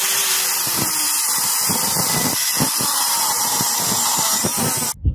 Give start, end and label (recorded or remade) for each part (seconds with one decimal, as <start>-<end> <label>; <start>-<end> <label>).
0.0-2.4 remade; 2.4-5.1 recorded